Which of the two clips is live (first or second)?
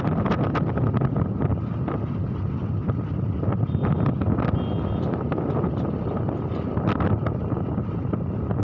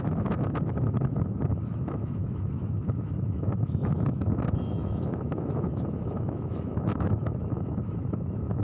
first